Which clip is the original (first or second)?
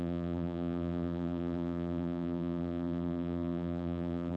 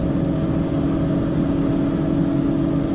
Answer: second